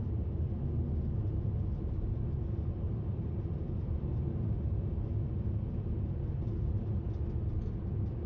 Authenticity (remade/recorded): recorded